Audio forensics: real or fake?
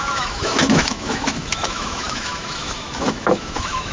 fake